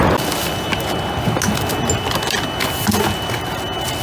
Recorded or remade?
recorded